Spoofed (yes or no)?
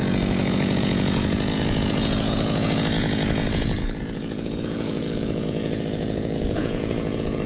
yes